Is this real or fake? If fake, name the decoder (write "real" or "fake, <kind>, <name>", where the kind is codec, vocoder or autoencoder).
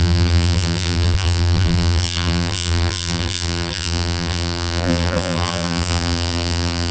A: fake, vocoder, BigVGAN v2